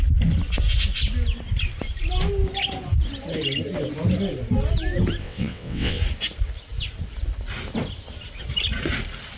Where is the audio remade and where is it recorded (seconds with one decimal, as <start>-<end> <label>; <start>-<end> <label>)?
0.0-5.2 recorded; 5.2-6.0 remade; 6.0-9.4 recorded